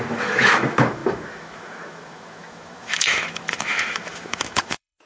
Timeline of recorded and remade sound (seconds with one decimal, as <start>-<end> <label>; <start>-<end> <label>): 0.0-5.1 remade